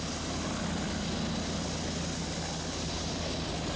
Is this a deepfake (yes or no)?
no